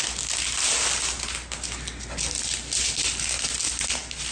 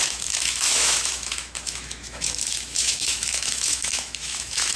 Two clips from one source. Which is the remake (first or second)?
second